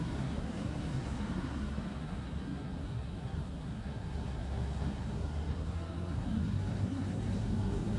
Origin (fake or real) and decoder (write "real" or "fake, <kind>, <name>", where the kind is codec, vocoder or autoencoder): fake, codec, SNAC